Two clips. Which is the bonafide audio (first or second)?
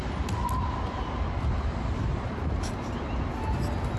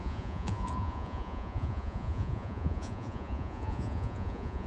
first